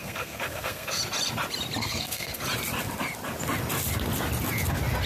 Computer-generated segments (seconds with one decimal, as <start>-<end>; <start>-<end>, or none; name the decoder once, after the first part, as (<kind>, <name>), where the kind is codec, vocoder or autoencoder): 0.0-1.0 (codec, SNAC); 1.8-2.4